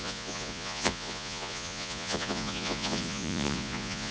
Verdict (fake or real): fake